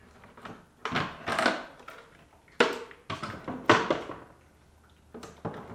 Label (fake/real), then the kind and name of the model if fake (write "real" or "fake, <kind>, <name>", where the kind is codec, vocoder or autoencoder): real